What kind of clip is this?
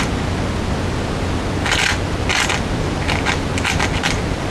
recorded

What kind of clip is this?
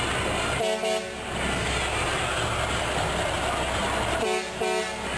recorded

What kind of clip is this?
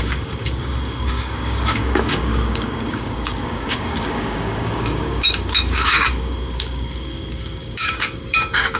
remade